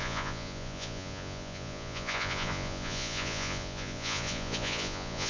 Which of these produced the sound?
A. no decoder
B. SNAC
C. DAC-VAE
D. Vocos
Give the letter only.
D